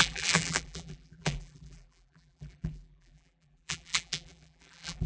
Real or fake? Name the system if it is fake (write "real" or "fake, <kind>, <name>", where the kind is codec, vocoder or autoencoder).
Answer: fake, vocoder, BigVGAN v2